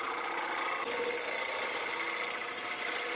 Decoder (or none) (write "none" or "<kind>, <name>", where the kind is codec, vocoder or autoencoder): none